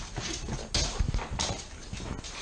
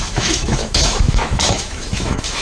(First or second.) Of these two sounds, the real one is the first